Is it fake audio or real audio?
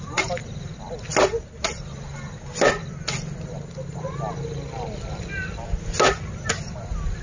real